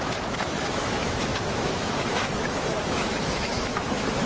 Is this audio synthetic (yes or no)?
yes